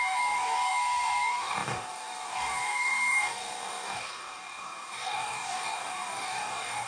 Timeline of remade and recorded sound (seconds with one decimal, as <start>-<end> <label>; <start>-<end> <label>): 0.0-6.9 remade